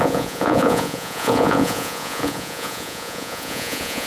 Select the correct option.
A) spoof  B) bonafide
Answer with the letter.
A